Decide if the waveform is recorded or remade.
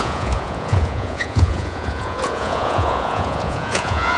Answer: remade